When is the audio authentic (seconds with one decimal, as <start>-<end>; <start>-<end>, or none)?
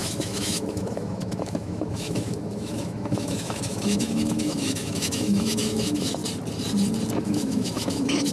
6.2-7.2